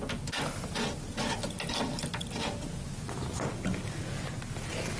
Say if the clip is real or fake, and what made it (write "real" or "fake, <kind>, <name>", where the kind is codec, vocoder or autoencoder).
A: real